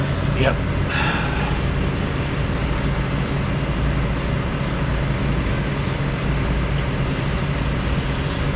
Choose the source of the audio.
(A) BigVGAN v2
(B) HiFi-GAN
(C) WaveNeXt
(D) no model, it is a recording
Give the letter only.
D